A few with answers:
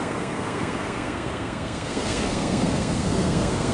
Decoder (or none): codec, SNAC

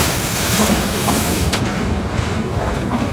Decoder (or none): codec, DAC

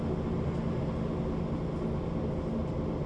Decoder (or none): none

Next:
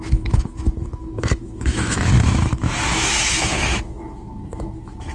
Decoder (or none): autoencoder, DAC-VAE